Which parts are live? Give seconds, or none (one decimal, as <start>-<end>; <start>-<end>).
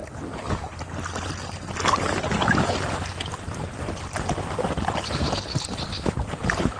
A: 0.0-6.8